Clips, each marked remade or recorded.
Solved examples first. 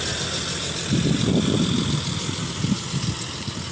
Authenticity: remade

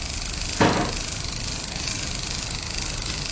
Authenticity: recorded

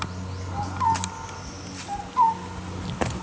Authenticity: recorded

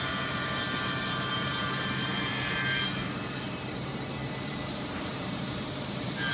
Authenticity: remade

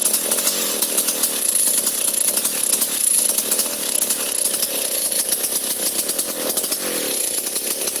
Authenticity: recorded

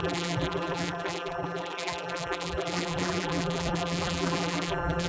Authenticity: remade